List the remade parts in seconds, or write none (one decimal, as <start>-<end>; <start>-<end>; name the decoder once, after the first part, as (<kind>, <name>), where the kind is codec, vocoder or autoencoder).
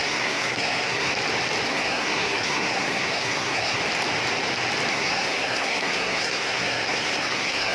0.0-1.1 (codec, SNAC); 1.7-3.8; 4.9-7.7